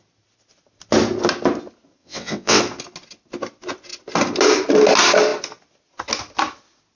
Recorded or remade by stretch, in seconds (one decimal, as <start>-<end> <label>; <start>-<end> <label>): 0.0-2.0 recorded; 2.0-2.6 remade; 2.6-7.0 recorded